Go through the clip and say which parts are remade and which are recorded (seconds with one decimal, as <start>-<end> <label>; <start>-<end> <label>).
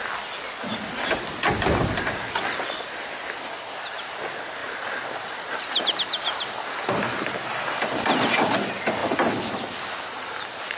0.0-10.8 recorded